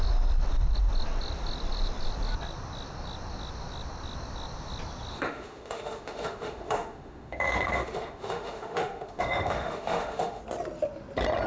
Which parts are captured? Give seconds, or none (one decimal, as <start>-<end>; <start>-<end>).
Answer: 0.0-5.1; 10.4-11.5